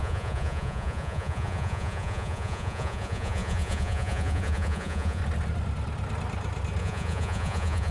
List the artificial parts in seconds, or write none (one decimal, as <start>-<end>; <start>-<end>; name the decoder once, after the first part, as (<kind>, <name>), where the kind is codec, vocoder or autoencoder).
0.0-5.2 (vocoder, Vocos); 6.8-7.9